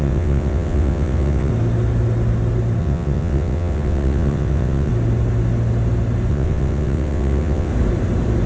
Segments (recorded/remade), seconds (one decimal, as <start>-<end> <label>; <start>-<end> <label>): 0.0-1.5 remade; 1.5-2.8 recorded; 2.8-4.9 remade; 4.9-6.3 recorded; 6.3-7.7 remade; 7.7-8.5 recorded